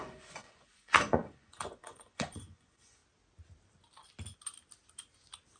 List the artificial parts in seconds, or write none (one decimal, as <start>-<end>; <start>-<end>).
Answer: 0.0-3.0